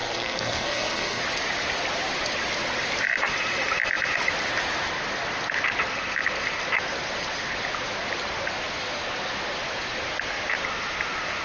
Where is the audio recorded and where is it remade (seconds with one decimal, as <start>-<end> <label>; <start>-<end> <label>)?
0.0-1.2 remade; 1.2-11.4 recorded